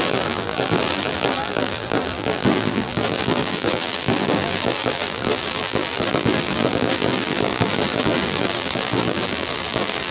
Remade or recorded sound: remade